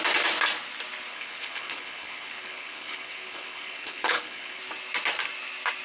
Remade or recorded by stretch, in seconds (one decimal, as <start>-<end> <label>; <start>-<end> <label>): 0.0-1.1 recorded; 1.1-4.6 remade; 4.6-5.8 recorded